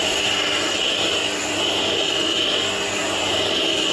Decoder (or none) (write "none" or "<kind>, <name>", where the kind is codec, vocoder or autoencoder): none